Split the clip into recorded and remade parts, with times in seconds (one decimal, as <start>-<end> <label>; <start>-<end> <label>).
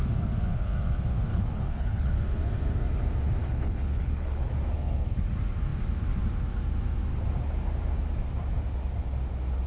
0.0-1.3 recorded; 1.3-2.2 remade; 2.2-3.4 recorded; 3.4-4.5 remade; 4.5-9.7 recorded